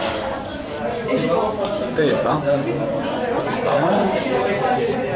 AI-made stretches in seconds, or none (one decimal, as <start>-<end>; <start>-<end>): 0.0-0.5; 1.5-5.2